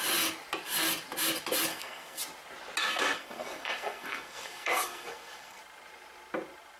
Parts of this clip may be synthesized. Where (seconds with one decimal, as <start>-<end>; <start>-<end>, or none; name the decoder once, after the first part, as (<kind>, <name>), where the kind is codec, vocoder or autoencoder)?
1.7-2.2 (codec, SNAC); 2.8-5.6